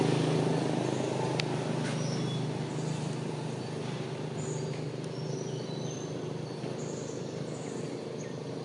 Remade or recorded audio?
recorded